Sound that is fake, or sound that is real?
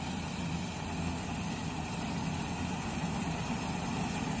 real